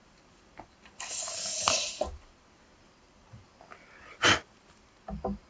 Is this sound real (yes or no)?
yes